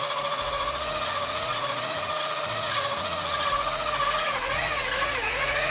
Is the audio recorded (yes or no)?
no